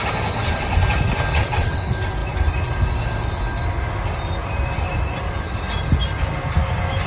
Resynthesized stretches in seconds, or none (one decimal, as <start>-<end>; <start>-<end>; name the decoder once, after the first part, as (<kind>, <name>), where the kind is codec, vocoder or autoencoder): 1.3-1.8 (vocoder, WaveNeXt)